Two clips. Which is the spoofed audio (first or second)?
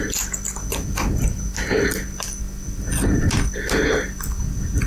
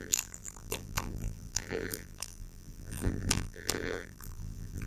second